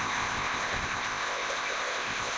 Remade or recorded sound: remade